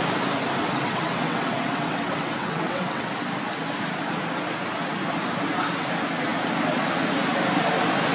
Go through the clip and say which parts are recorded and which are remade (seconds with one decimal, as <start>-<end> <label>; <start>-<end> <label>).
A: 0.0-0.6 recorded; 0.6-3.1 remade; 3.1-8.1 recorded